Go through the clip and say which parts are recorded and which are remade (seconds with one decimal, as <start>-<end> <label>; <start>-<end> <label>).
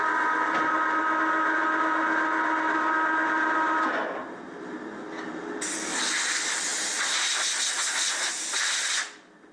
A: 0.0-9.5 recorded